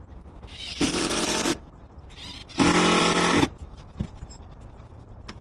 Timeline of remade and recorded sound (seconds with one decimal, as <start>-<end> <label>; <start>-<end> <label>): 0.0-2.4 remade; 2.4-3.0 recorded; 3.0-5.4 remade